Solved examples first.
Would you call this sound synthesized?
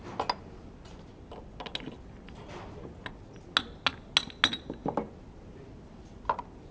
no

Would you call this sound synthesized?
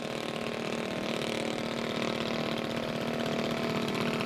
no